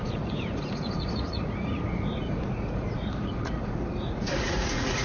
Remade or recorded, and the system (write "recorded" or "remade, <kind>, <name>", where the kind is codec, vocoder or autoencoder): remade, vocoder, Vocos